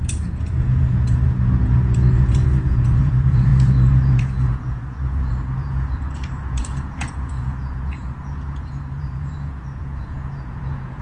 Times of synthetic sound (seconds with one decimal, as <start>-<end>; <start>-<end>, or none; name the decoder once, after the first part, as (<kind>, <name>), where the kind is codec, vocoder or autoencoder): 0.0-11.0 (vocoder, Vocos)